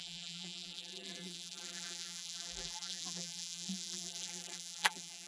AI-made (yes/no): yes